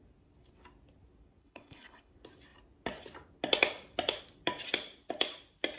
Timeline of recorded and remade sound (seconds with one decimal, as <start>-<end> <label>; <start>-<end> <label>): 0.0-1.4 recorded; 1.4-2.1 remade; 2.1-5.8 recorded